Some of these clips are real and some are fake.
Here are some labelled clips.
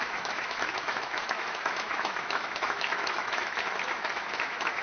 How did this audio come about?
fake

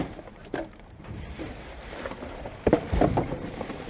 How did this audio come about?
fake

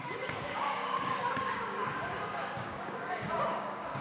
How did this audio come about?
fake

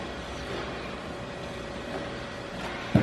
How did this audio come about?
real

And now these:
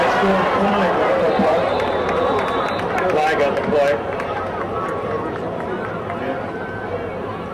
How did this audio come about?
fake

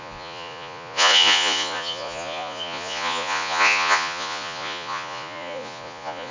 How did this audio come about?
fake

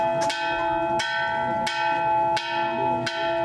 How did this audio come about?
real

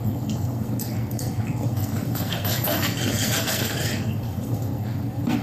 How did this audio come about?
fake